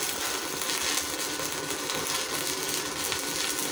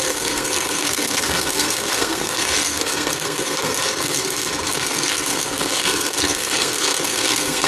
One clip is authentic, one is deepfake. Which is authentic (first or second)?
first